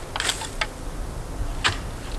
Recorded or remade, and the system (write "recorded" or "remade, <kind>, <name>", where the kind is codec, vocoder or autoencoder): recorded